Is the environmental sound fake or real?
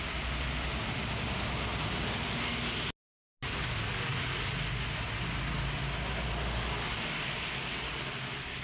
real